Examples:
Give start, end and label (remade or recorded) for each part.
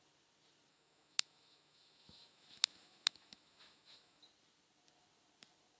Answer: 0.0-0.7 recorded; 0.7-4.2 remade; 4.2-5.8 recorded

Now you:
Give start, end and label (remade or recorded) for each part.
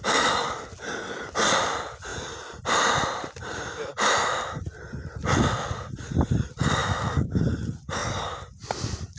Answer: 0.0-6.8 recorded; 6.8-7.4 remade; 7.4-9.2 recorded